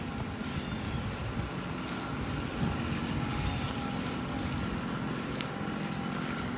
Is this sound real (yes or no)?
yes